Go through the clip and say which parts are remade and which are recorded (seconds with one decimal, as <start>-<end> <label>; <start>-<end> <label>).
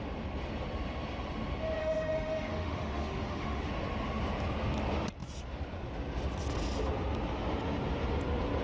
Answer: 0.0-1.8 recorded; 1.8-3.7 remade; 3.7-8.6 recorded